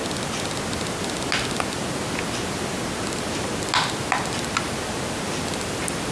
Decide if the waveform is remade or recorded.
recorded